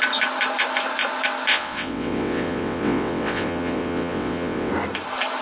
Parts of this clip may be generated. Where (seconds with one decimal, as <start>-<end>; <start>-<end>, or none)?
1.5-4.7